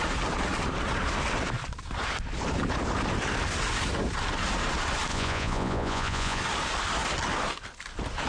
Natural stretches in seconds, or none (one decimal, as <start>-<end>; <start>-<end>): 0.0-5.1; 6.4-8.3